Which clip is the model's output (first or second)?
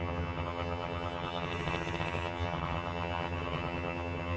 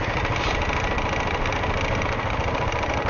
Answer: first